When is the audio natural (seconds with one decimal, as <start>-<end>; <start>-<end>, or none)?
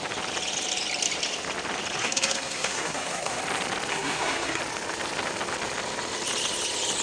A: 0.0-2.0; 3.4-3.9; 4.6-7.0